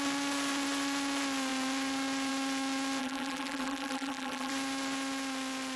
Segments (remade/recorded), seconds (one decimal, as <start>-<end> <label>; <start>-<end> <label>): 0.0-3.0 recorded; 3.0-4.5 remade; 4.5-5.8 recorded